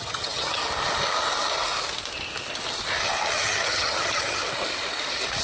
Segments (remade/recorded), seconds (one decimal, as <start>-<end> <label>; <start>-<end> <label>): 0.0-0.6 remade; 0.6-3.3 recorded; 3.3-4.4 remade; 4.4-5.4 recorded